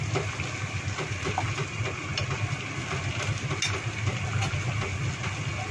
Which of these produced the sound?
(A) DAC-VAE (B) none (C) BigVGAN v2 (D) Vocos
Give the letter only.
B